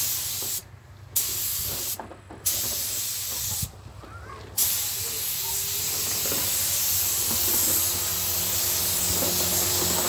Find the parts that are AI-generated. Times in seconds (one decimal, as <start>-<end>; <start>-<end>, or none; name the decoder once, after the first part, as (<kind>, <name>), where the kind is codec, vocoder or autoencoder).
none